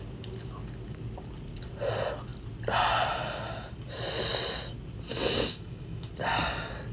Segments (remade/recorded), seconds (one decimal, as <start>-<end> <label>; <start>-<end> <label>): 0.0-5.1 recorded; 5.1-6.1 remade; 6.1-6.9 recorded